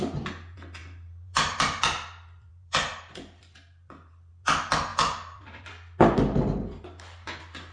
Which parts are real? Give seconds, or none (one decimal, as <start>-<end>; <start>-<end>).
0.0-0.8; 4.3-4.9; 5.7-7.7